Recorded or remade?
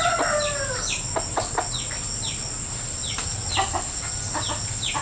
recorded